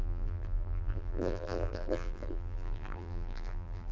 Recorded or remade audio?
remade